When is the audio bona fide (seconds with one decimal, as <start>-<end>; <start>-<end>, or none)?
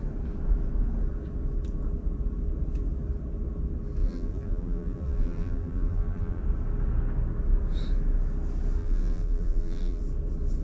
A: 0.0-4.0; 6.4-8.8; 10.0-10.6